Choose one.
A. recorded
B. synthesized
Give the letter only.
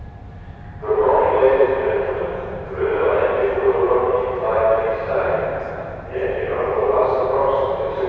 B